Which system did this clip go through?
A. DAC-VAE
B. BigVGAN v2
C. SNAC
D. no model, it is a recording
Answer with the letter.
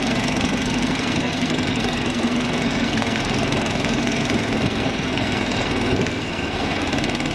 C